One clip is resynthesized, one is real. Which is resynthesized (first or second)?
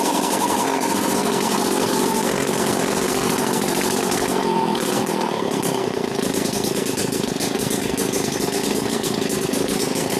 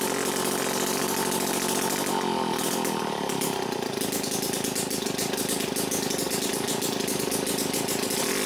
first